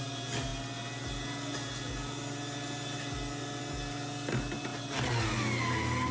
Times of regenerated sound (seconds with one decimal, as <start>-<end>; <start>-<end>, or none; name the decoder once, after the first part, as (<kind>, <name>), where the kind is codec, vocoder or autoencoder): none